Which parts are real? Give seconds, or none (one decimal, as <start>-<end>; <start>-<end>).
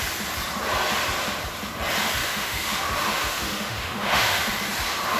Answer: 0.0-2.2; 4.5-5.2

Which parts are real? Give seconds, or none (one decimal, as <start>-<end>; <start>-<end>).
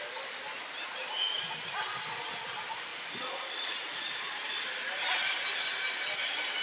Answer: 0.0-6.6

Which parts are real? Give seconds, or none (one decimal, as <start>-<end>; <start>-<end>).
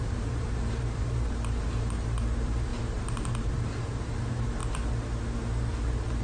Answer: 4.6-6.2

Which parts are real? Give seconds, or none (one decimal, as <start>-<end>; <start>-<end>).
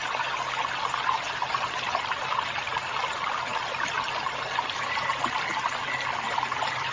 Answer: 0.0-6.9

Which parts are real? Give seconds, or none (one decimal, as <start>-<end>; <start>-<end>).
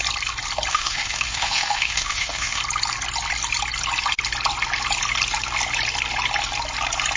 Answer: 0.0-0.7; 2.6-7.2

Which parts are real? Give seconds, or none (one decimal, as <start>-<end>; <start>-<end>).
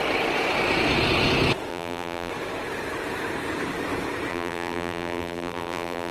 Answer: 0.0-1.7; 2.3-4.3